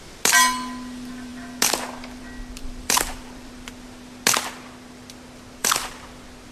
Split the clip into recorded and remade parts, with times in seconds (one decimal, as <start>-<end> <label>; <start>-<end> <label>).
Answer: 0.0-2.6 recorded; 2.6-3.5 remade; 3.5-5.6 recorded; 5.6-6.1 remade; 6.1-6.5 recorded